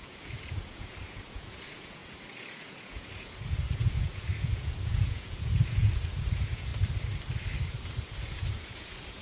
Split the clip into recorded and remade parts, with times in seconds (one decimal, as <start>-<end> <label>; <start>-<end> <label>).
0.0-6.7 remade; 6.7-8.0 recorded; 8.0-9.2 remade